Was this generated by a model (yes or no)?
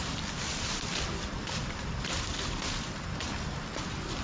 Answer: no